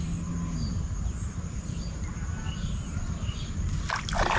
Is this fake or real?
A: real